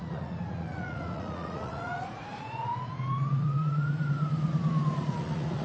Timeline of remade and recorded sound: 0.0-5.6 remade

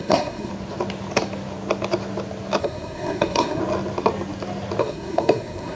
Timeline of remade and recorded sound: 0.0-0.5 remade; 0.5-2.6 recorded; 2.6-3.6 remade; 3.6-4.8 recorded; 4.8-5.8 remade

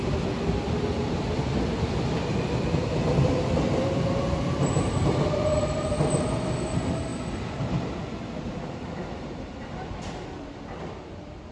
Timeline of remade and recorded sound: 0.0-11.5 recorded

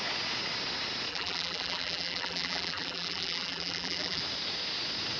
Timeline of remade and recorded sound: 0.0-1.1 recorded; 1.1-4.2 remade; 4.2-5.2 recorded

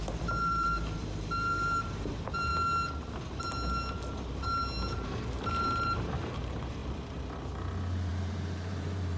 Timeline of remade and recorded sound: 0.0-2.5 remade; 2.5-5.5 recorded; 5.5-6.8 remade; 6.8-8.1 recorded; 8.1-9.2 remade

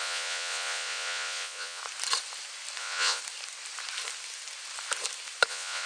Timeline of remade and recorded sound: 0.0-1.8 remade; 1.8-2.8 recorded; 2.8-3.2 remade; 3.2-5.5 recorded; 5.5-5.9 remade

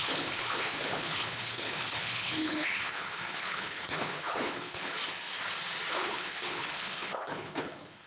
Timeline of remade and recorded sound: 0.0-4.9 remade; 4.9-5.9 recorded; 5.9-8.1 remade

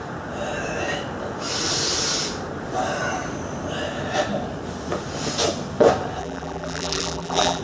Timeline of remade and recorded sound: 0.0-6.2 recorded; 6.2-7.6 remade